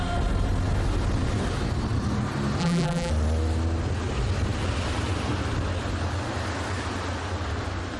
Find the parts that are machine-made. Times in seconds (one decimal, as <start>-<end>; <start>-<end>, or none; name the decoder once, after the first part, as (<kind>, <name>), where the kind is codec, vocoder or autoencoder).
2.6-3.1 (vocoder, BigVGAN v2)